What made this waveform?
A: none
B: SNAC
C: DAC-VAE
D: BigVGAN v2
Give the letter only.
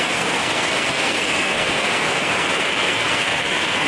B